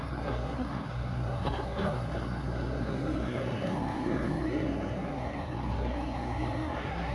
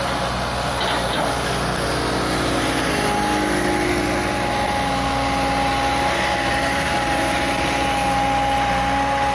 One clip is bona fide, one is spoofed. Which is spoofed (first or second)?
first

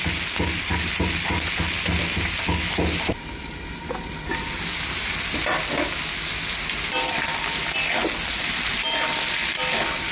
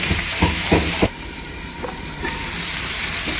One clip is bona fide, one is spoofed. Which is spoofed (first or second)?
second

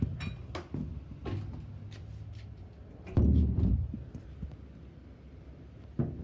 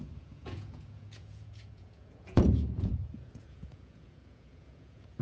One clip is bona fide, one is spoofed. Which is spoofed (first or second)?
second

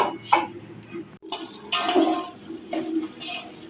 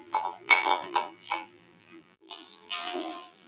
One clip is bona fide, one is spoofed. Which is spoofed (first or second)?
second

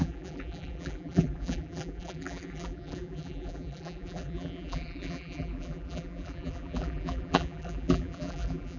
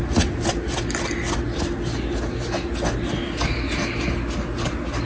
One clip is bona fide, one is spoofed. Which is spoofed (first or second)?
first